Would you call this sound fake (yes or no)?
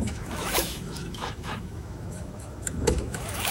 yes